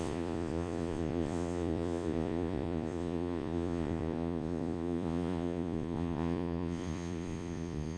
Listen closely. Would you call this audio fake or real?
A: fake